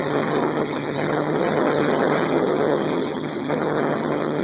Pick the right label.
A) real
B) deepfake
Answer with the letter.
B